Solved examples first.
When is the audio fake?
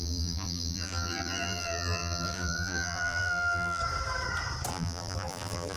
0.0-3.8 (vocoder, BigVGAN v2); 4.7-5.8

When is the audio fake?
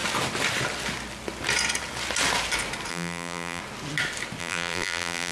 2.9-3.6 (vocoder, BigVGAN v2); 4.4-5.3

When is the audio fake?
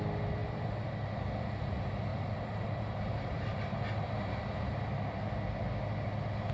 0.4-0.9 (vocoder, BigVGAN v2); 2.1-4.8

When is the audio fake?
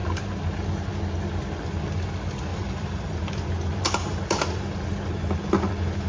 2.5-3.3 (vocoder, BigVGAN v2)